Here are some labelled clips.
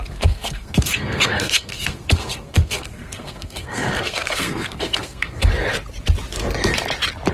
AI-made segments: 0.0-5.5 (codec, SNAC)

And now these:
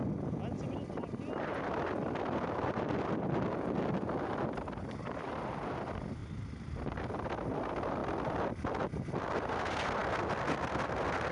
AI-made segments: none

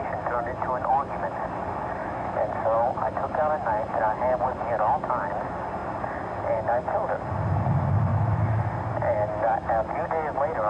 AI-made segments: 2.0-2.6 (autoencoder, DAC-VAE); 8.1-8.7

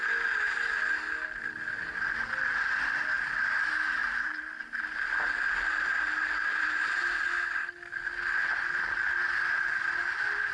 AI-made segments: 4.0-4.8 (vocoder, BigVGAN v2); 6.4-7.0

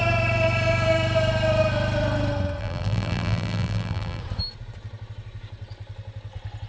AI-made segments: 2.6-4.2 (vocoder, BigVGAN v2)

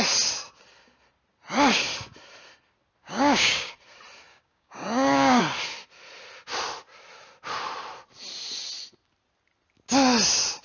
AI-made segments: 3.0-3.7 (codec, DAC); 4.3-5.4